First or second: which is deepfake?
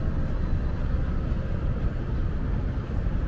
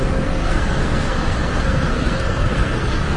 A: second